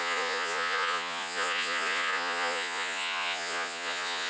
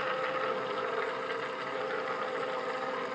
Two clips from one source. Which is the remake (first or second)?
first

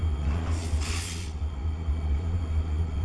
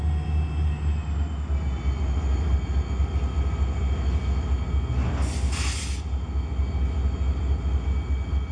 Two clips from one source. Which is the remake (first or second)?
first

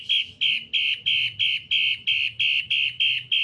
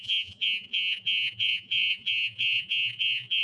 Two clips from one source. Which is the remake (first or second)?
second